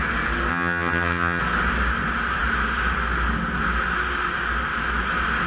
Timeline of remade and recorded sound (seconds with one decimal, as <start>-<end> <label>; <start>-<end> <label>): 0.0-0.5 recorded; 0.5-1.4 remade; 1.4-5.5 recorded